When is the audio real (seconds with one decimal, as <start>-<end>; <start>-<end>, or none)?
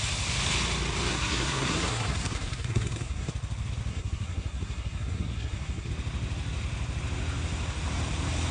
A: 0.0-1.1; 3.3-3.9; 5.9-8.5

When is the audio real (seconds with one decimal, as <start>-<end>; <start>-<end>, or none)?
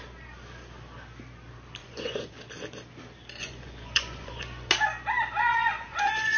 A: 0.0-1.8; 2.4-3.4; 4.7-5.5